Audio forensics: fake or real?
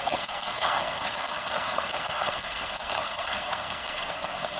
fake